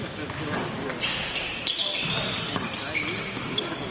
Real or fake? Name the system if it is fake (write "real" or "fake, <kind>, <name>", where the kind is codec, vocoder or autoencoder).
real